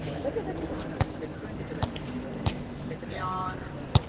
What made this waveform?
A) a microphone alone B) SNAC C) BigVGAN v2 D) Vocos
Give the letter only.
C